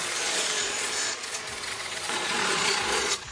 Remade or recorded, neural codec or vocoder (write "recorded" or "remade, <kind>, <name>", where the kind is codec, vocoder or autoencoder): remade, vocoder, Vocos